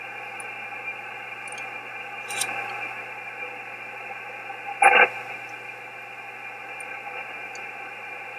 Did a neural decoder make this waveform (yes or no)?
no